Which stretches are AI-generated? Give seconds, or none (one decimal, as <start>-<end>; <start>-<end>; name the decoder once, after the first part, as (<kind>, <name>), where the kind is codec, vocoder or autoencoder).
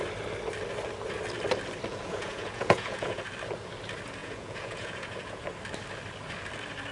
1.9-3.2 (vocoder, Vocos); 4.2-5.4